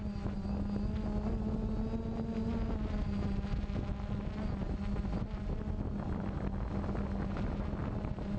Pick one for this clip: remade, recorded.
recorded